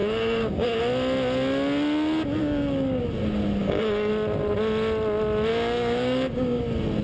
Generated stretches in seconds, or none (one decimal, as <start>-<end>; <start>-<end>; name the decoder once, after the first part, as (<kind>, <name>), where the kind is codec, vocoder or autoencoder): 0.0-0.8 (codec, DAC); 2.4-3.0; 3.6-4.1; 5.5-6.6